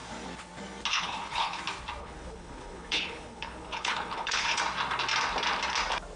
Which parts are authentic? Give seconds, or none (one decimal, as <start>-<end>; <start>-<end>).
0.0-0.9; 1.6-2.0; 4.6-6.2